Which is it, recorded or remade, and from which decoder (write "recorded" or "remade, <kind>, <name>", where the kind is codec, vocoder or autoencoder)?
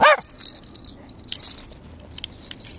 recorded